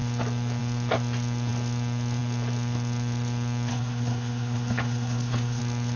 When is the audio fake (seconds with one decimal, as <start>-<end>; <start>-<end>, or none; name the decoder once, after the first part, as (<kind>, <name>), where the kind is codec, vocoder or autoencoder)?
3.7-5.6 (codec, HILCodec)